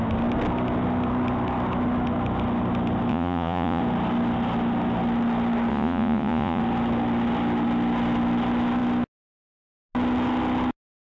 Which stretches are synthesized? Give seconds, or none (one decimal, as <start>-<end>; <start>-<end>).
3.1-3.8; 5.7-6.6